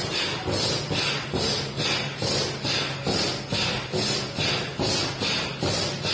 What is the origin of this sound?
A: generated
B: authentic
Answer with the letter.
B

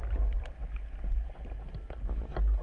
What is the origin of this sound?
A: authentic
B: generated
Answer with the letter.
A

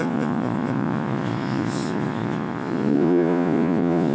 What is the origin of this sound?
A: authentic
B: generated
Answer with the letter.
B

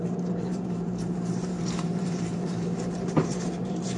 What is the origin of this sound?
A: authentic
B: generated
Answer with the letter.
B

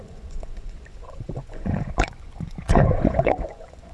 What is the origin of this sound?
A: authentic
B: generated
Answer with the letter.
B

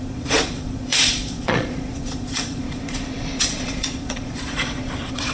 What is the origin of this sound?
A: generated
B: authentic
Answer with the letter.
A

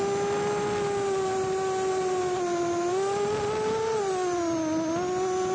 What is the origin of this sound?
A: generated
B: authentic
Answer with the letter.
B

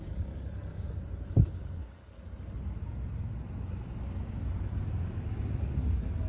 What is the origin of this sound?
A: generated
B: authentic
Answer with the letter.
B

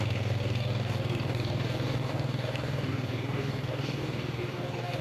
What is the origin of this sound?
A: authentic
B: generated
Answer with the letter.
B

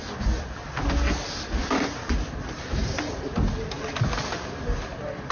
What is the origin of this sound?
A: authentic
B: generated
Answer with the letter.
A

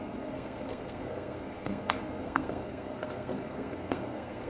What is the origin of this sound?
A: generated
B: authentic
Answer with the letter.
A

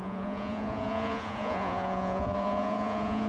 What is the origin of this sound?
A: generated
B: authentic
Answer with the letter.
A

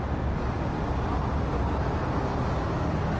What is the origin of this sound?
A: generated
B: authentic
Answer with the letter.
B